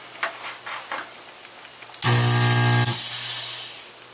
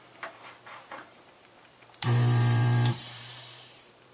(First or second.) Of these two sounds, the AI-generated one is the second